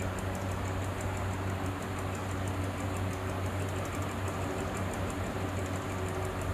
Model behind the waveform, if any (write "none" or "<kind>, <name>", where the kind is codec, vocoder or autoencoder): none